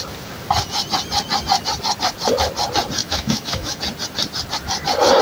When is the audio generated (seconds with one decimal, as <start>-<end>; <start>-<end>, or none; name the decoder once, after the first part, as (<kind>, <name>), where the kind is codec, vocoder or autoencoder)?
3.0-3.8 (autoencoder, DAC-VAE)